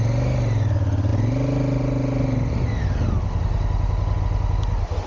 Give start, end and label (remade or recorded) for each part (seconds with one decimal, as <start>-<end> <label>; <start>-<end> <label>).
0.0-5.1 recorded